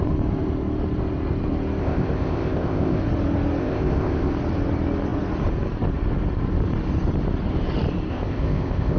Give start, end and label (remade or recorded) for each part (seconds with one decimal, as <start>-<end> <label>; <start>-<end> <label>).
0.0-1.8 recorded; 1.8-3.0 remade; 3.0-3.6 recorded; 3.6-4.3 remade; 4.3-8.1 recorded; 8.1-9.0 remade